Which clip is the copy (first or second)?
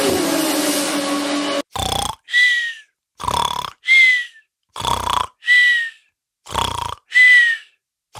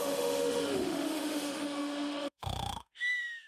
second